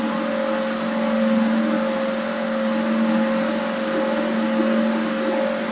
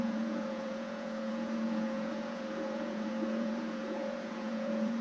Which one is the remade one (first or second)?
second